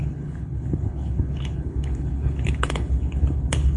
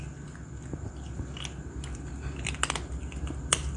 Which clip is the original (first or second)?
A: second